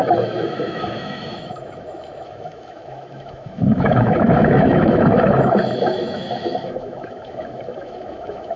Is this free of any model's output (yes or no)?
no